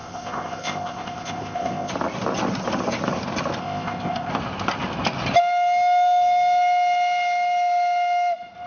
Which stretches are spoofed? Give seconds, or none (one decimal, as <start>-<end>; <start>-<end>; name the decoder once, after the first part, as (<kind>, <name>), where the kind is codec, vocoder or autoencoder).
0.0-1.9 (codec, ZipCodec); 3.6-4.3